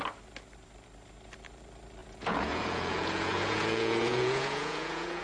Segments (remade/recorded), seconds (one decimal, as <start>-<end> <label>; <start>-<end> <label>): 0.0-2.0 recorded; 2.0-5.2 remade